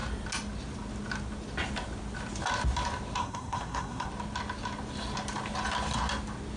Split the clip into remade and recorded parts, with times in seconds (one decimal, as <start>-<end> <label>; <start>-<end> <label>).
0.0-3.2 recorded; 3.2-4.1 remade; 4.1-6.6 recorded